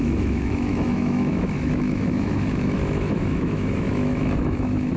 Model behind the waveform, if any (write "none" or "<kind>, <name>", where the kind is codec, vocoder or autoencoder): autoencoder, DAC-VAE